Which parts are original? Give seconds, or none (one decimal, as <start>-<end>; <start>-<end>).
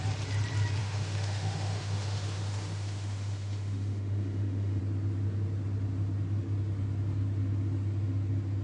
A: 0.0-0.8; 4.8-8.6